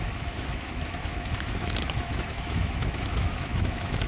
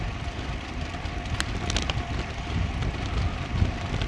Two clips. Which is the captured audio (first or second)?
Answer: second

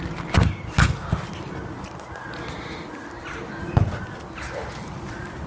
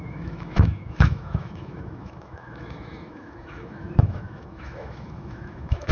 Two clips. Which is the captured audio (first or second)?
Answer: first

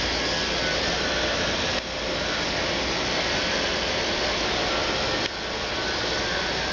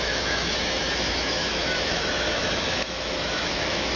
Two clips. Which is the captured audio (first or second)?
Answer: first